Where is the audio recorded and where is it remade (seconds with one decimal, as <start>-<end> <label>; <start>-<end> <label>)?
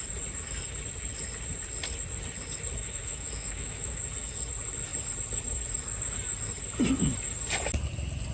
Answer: 0.0-2.8 recorded; 2.8-4.0 remade; 4.0-8.3 recorded